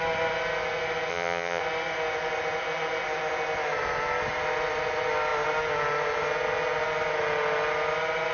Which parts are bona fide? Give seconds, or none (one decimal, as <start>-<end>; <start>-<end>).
0.0-1.1; 1.6-8.3